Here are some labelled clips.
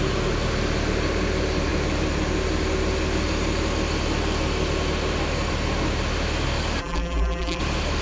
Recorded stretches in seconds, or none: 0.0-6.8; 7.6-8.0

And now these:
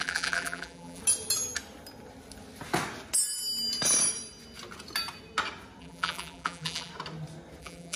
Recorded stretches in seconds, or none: 1.0-5.8; 6.9-7.6

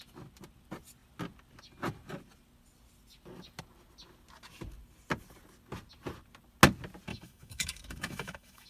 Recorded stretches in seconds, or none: 0.0-7.1

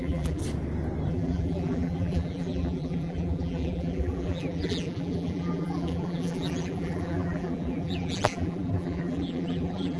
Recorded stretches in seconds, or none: 0.4-1.1